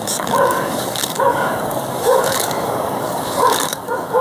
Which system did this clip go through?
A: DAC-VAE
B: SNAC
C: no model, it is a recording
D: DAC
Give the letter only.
D